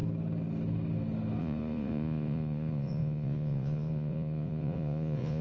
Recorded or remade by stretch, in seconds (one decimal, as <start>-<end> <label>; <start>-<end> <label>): 0.0-1.4 recorded; 1.4-5.4 remade